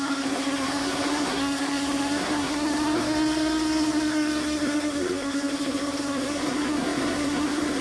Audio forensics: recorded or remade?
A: remade